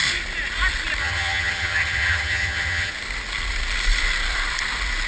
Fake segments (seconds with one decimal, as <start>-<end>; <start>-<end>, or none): 1.0-2.9